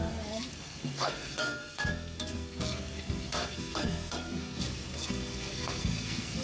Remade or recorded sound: remade